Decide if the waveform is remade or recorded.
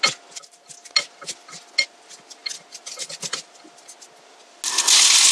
recorded